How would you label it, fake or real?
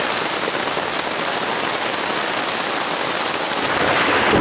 real